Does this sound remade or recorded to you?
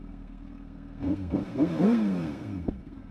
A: remade